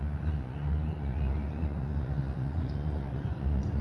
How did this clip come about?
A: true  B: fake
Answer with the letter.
B